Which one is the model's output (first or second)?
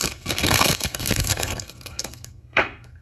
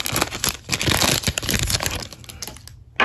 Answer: first